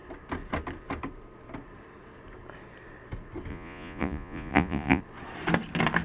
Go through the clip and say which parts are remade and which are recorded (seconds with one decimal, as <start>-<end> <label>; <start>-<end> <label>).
0.0-3.5 recorded; 3.5-5.0 remade; 5.0-6.0 recorded